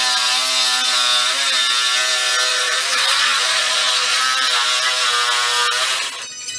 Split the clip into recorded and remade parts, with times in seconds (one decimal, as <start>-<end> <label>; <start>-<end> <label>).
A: 0.0-2.5 recorded; 2.5-4.2 remade; 4.2-6.6 recorded